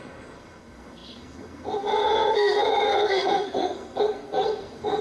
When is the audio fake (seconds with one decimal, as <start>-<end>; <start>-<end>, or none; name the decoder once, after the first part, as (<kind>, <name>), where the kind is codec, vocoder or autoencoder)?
0.0-5.0 (codec, SNAC)